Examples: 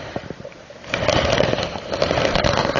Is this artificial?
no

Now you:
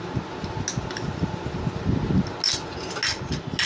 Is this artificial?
no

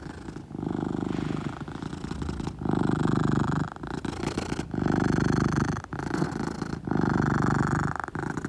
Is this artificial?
no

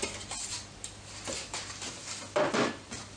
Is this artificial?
no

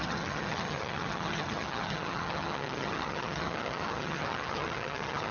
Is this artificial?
yes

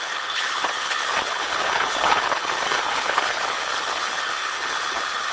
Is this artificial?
yes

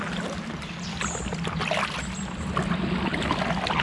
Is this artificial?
no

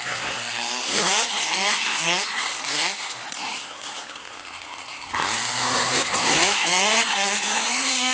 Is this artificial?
yes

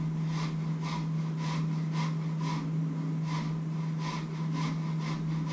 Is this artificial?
no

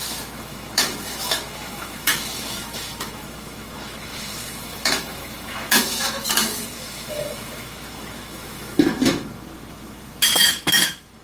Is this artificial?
yes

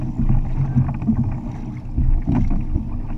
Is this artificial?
no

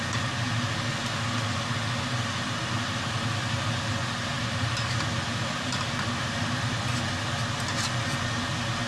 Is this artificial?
no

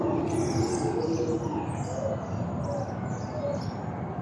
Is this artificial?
no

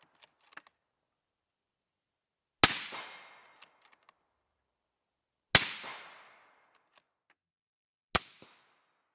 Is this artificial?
no